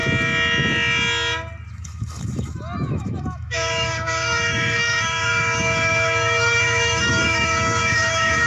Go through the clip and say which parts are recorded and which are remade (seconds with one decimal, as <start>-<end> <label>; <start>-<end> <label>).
0.0-1.7 recorded; 1.7-8.5 remade

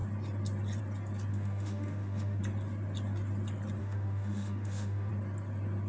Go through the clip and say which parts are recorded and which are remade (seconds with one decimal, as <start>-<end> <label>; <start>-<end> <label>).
0.0-1.3 recorded; 1.3-2.4 remade; 2.4-3.8 recorded; 3.8-5.1 remade; 5.1-5.9 recorded

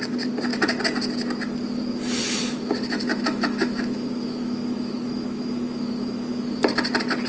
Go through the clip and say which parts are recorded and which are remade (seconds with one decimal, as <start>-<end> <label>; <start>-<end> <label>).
0.0-2.2 recorded; 2.2-6.6 remade; 6.6-7.3 recorded

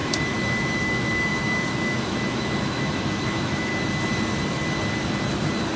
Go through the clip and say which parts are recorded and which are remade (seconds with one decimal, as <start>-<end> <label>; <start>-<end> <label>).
0.0-3.7 remade; 3.7-5.8 recorded

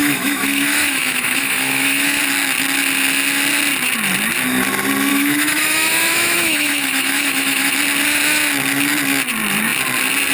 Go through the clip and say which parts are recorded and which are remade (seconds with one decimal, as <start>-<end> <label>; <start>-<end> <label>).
0.0-2.2 remade; 2.2-5.1 recorded; 5.1-7.7 remade; 7.7-10.3 recorded

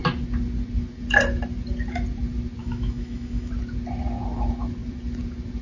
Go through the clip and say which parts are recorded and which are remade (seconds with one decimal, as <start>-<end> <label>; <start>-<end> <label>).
0.0-2.6 recorded; 2.6-3.5 remade; 3.5-5.6 recorded

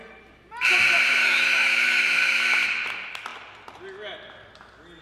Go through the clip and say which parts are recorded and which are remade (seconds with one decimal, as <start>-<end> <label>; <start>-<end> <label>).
0.0-1.2 recorded; 1.2-2.4 remade; 2.4-5.0 recorded